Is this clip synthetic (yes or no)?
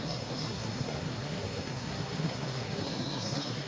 yes